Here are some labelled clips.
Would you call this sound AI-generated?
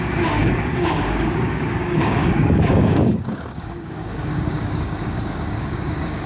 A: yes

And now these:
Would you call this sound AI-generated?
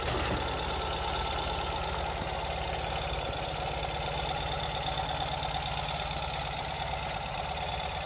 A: no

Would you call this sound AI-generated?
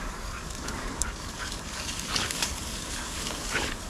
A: yes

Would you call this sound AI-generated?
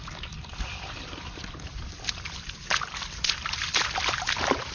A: no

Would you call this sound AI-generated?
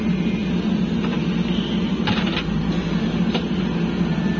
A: no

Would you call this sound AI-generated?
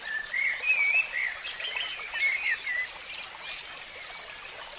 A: no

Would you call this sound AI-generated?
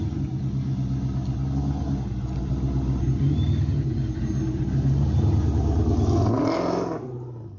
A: no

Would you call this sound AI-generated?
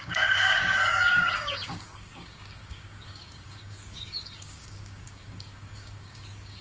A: yes